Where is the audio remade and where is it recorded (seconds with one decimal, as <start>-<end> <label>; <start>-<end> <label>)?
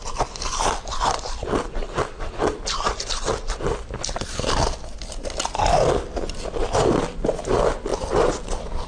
0.0-8.9 recorded